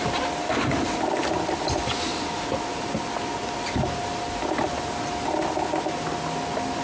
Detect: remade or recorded recorded